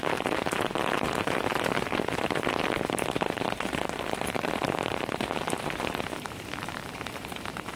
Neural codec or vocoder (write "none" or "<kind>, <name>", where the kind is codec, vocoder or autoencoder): vocoder, BigVGAN v2